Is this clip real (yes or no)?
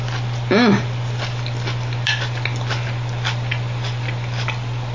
yes